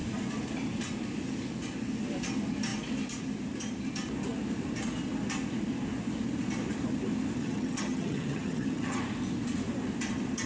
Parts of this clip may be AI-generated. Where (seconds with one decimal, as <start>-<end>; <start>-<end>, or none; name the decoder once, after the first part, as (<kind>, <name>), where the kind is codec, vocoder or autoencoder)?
7.4-9.0 (vocoder, HiFi-GAN)